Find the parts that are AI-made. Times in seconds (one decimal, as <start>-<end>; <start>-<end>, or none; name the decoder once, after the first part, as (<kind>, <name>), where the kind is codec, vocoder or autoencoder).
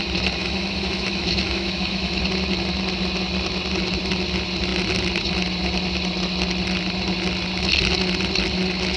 0.4-2.2 (autoencoder, DAC-VAE)